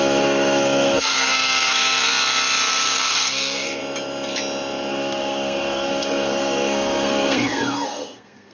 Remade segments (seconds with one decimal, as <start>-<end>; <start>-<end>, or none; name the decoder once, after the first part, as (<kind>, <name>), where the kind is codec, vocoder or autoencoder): 0.0-2.1 (codec, SNAC); 2.7-3.8; 4.9-8.5